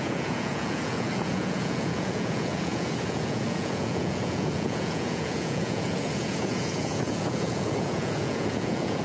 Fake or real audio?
fake